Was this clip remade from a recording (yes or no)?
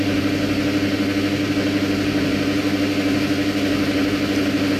no